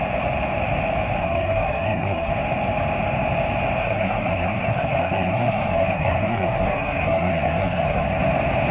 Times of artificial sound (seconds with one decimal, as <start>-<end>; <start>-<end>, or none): 1.2-2.3; 3.8-8.2